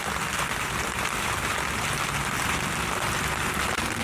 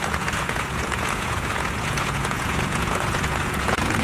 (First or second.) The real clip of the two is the first